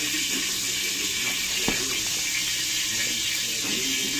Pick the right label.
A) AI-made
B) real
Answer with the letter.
B